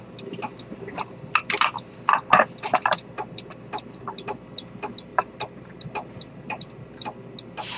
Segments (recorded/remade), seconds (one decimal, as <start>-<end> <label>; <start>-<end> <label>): 0.0-5.1 recorded; 5.1-7.3 remade; 7.3-7.8 recorded